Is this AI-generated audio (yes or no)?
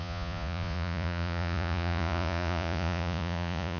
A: yes